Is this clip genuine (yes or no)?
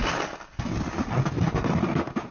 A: yes